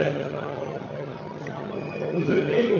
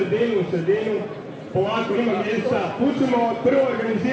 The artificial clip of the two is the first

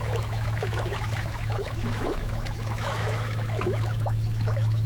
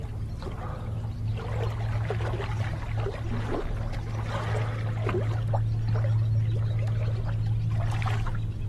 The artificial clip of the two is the first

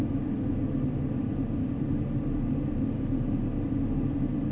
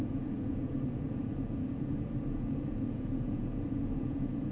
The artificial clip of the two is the second